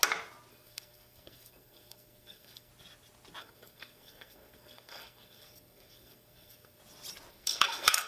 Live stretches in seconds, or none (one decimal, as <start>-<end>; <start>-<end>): 0.0-0.5; 2.7-3.4; 6.8-7.3